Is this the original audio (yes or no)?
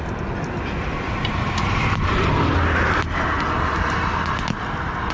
yes